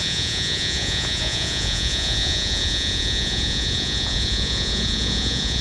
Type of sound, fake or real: fake